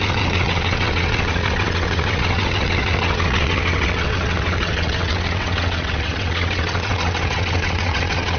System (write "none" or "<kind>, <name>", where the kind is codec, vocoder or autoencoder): vocoder, WaveNeXt